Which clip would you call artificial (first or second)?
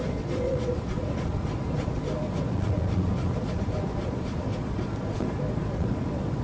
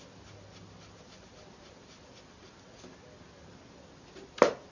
first